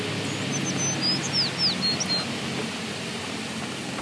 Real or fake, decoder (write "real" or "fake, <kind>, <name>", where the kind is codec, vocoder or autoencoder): real